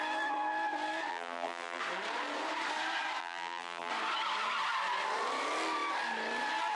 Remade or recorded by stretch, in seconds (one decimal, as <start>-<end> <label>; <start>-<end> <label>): 0.0-1.1 recorded; 1.1-1.8 remade; 1.8-3.2 recorded; 3.2-3.9 remade; 3.9-6.8 recorded